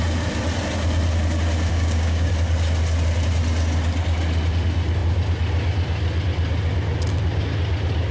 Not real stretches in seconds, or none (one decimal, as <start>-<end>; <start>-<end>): 1.7-2.3